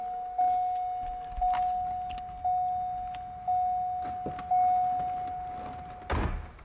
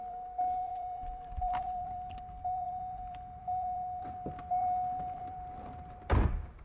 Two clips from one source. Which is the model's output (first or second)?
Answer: second